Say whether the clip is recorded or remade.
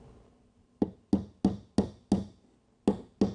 recorded